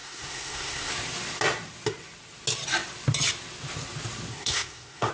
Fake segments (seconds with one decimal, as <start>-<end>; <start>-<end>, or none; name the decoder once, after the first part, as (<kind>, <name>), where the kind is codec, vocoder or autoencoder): 0.0-0.9 (codec, SNAC); 4.3-5.1